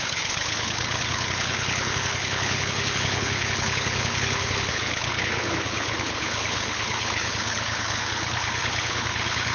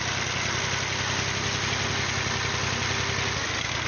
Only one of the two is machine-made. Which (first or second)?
first